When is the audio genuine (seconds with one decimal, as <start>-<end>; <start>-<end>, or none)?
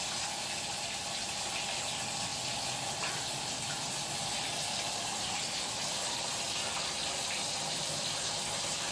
0.0-8.9